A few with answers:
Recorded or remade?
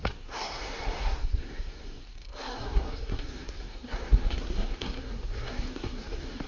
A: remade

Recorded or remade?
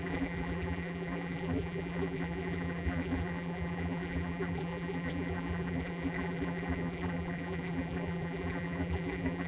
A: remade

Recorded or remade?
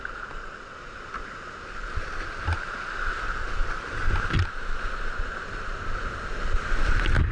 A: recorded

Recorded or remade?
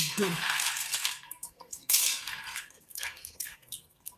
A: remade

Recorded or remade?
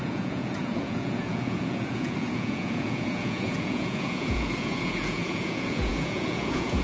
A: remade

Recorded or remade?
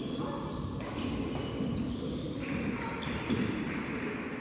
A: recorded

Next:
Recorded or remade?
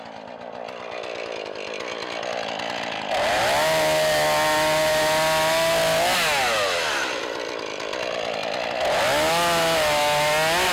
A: recorded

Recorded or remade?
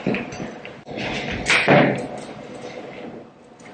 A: recorded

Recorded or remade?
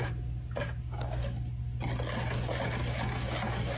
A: recorded